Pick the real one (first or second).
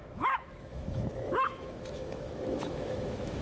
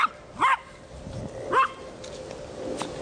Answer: second